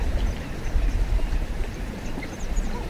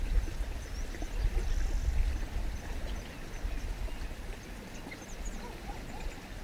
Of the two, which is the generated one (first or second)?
first